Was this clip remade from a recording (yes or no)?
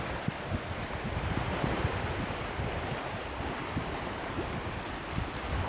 no